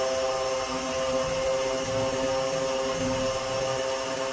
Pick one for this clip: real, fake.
real